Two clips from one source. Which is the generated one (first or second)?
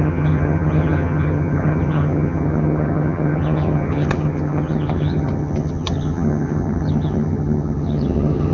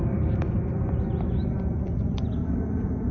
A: first